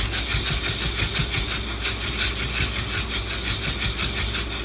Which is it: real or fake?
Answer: real